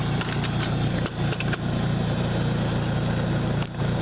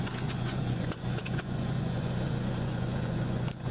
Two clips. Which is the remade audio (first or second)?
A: second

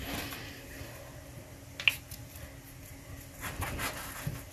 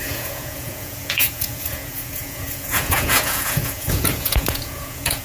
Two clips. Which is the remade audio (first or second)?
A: second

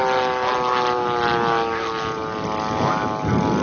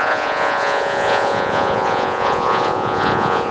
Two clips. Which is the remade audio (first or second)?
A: second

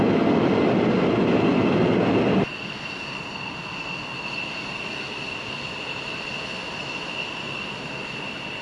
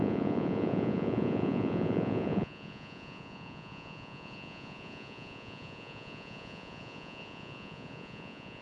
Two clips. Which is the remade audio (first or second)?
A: second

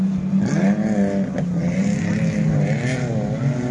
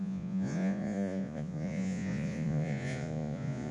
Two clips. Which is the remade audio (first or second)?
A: second